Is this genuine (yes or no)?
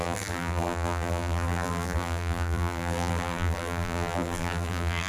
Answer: no